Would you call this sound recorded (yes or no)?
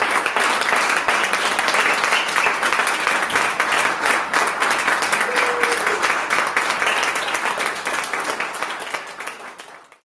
yes